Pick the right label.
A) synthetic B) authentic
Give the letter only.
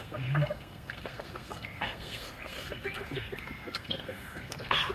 A